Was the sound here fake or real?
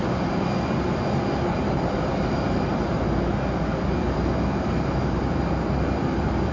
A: fake